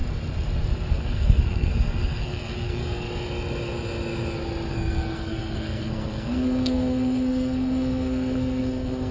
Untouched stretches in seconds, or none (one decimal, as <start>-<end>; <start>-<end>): 0.0-0.9; 2.8-4.7